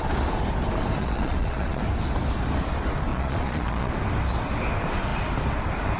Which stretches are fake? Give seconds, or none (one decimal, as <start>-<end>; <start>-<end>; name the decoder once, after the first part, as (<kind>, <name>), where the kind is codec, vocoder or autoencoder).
1.0-1.8 (vocoder, Vocos); 3.1-3.9